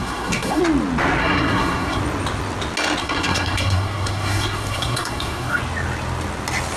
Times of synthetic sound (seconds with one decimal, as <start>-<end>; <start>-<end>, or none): 0.0-0.6; 1.2-2.0; 3.0-5.6